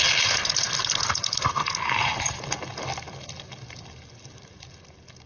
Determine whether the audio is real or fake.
real